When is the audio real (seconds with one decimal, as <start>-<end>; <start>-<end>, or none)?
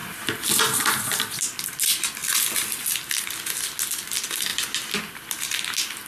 0.0-6.1